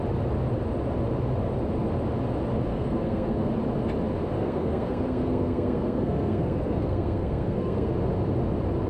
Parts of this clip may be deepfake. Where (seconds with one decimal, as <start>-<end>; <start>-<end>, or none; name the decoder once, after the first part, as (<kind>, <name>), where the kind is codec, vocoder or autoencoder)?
2.7-3.5 (codec, SNAC); 4.4-7.9